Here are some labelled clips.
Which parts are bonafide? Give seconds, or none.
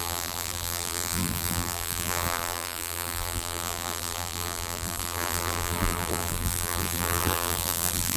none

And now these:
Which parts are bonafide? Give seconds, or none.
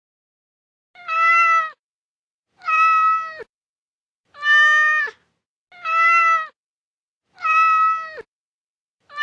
0.0-9.2